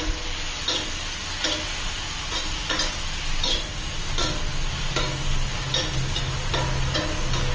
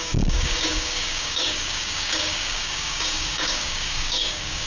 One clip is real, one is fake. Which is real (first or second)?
first